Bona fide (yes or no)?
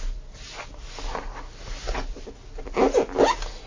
yes